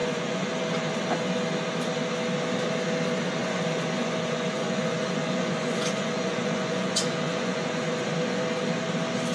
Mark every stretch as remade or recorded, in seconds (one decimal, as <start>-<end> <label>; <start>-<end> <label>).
0.0-0.5 remade; 0.5-3.4 recorded; 3.4-8.4 remade; 8.4-9.3 recorded